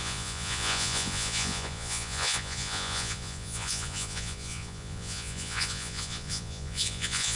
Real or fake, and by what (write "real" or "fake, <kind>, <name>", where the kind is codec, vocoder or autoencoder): fake, vocoder, Vocos